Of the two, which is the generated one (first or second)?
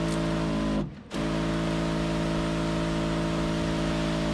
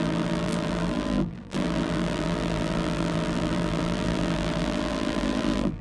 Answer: second